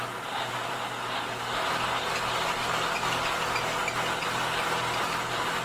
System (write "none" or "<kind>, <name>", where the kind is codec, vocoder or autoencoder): none